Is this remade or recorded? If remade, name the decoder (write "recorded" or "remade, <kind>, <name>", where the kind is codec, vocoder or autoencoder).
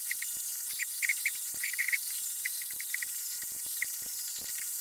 remade, vocoder, BigVGAN v2